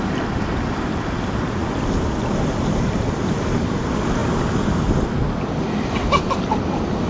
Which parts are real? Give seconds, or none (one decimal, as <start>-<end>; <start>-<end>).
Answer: 0.0-7.1